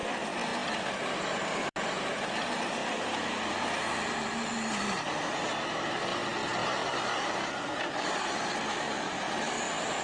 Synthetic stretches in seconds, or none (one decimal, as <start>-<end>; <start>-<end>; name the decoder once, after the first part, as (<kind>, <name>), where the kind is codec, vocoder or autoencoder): 0.8-2.8 (vocoder, BigVGAN v2); 3.9-6.0; 7.6-10.0